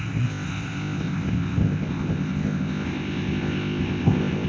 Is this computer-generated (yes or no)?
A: yes